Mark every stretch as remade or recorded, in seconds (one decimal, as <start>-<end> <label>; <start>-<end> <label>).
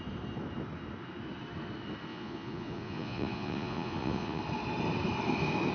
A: 0.0-2.1 recorded; 2.1-4.4 remade; 4.4-5.7 recorded